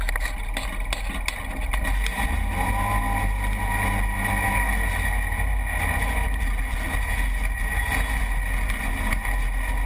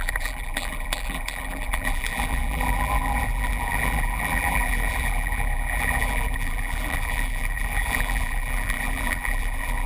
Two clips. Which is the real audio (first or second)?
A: first